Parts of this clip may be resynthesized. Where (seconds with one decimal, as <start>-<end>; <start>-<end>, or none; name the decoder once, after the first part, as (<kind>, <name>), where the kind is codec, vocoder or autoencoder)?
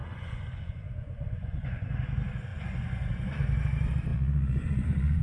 0.0-1.9 (vocoder, Vocos); 2.5-3.4; 4.1-5.2